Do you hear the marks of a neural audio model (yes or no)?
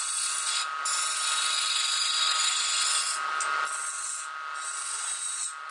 no